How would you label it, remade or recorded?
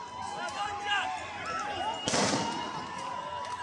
recorded